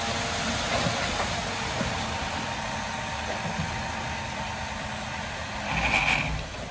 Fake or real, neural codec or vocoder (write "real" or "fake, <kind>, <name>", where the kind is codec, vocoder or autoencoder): real